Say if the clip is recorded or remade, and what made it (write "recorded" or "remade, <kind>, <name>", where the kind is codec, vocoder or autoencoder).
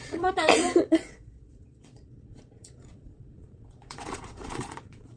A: remade, vocoder, Vocos